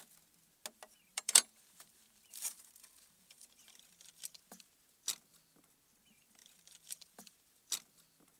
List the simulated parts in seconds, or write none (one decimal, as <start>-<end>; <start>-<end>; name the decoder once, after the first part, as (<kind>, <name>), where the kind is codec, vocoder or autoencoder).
1.1-4.2 (vocoder, BigVGAN v2); 6.4-7.6